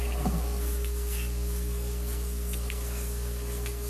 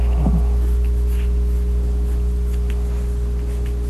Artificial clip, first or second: first